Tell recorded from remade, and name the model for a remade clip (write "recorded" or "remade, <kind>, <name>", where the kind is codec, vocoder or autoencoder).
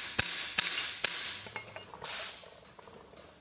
recorded